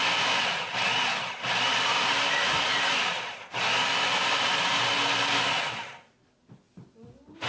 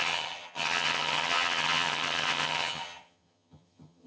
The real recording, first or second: first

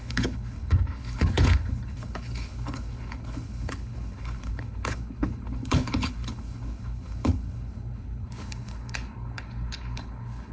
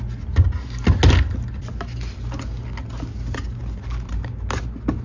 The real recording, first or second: second